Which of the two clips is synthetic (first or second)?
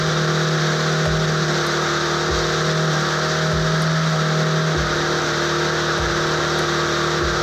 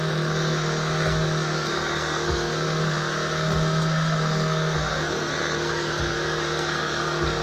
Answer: second